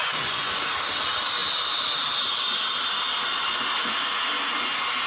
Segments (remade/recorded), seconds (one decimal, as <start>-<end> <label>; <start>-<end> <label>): 0.0-0.6 remade; 0.6-5.1 recorded